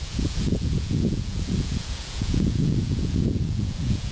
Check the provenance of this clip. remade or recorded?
remade